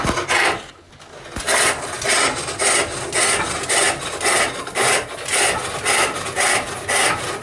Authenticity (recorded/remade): recorded